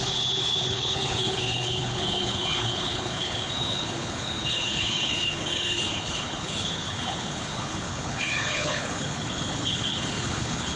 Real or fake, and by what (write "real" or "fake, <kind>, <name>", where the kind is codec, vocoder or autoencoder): fake, codec, HILCodec